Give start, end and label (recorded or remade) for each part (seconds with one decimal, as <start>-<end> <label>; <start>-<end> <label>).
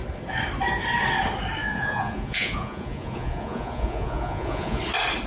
0.0-1.6 recorded; 1.6-4.8 remade; 4.8-5.3 recorded